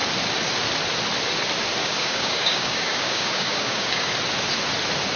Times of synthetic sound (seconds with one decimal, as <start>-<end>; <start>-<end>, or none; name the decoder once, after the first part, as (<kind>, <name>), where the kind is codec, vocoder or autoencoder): 1.8-4.1 (codec, DAC)